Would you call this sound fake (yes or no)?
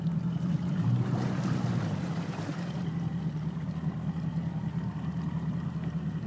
no